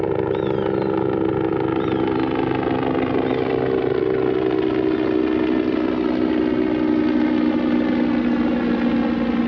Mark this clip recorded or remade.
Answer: recorded